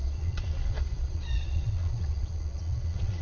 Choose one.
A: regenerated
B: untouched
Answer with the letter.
A